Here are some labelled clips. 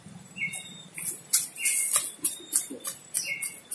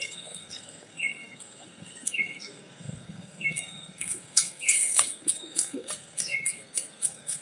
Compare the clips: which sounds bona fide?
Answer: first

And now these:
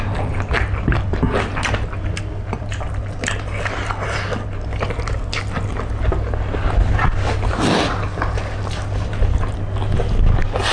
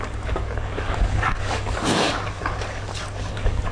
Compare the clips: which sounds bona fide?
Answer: first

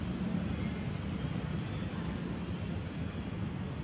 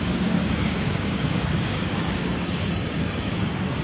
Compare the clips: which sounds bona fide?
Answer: first